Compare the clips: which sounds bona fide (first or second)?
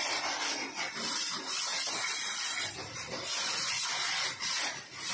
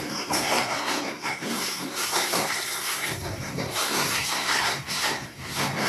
first